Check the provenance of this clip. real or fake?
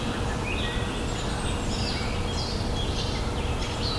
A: real